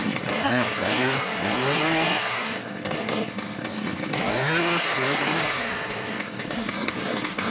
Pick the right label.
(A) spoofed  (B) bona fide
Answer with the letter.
A